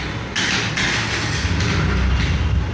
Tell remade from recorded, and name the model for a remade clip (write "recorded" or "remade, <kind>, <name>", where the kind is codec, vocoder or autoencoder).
recorded